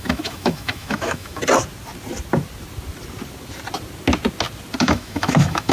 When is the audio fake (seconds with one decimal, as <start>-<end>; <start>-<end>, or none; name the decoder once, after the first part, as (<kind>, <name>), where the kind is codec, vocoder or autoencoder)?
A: 0.0-1.4 (autoencoder, DAC-VAE); 4.8-5.7